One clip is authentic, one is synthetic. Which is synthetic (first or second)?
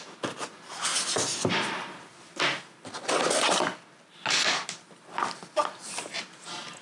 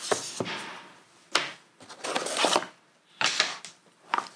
second